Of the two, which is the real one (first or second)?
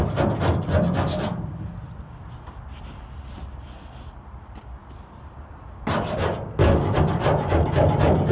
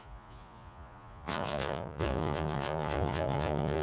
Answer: first